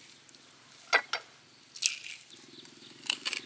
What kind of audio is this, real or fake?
real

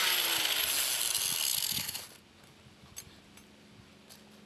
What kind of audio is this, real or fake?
real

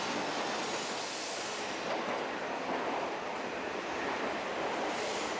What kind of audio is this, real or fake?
real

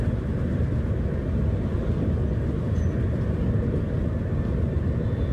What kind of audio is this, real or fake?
real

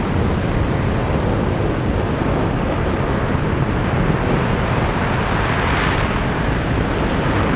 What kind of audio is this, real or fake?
real